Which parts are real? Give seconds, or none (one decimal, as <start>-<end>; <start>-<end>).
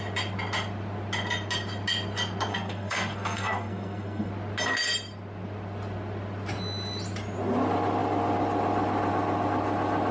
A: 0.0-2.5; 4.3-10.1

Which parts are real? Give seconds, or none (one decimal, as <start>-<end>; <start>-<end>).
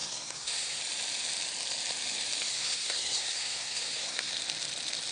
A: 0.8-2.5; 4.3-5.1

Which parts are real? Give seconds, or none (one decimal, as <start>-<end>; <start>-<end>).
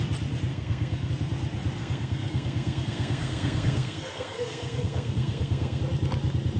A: 0.0-0.5; 1.1-1.8; 5.8-6.6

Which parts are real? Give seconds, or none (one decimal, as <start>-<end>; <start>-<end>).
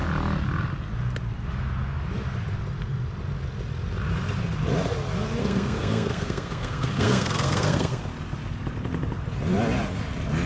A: 0.0-5.4; 8.0-10.5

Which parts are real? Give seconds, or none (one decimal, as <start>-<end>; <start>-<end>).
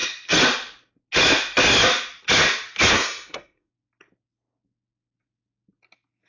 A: 0.0-2.9; 3.7-6.3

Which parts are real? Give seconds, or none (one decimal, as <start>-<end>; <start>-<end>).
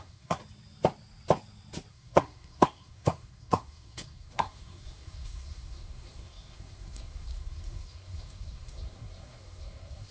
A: 0.4-1.9